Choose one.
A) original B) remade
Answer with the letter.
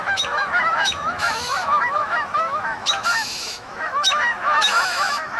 B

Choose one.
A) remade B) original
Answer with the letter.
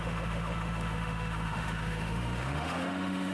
A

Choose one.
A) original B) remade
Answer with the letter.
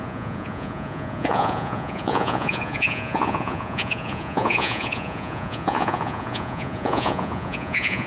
B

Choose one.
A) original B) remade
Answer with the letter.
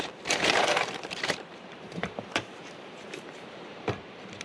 B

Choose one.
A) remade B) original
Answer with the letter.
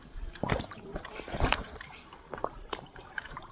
A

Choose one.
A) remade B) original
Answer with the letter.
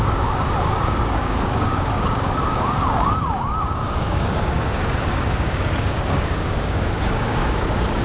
A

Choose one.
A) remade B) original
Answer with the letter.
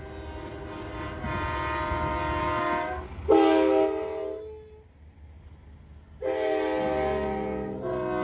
B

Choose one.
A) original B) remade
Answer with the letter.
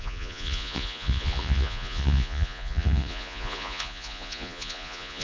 B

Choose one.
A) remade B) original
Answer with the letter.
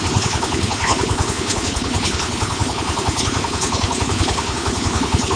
A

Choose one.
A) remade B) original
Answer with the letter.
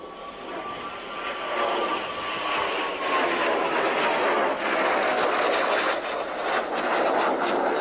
B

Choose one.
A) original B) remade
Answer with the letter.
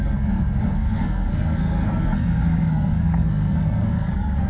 B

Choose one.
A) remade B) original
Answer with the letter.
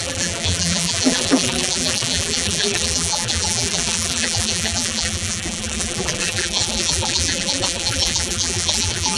A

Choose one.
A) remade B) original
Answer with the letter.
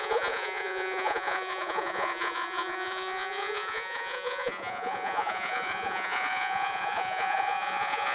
A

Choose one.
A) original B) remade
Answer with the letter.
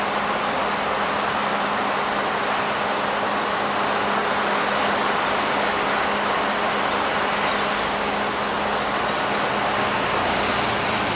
A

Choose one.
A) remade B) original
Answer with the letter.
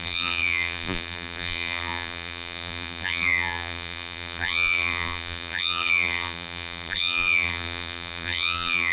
A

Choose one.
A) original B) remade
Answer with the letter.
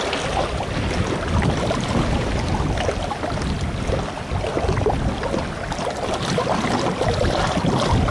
A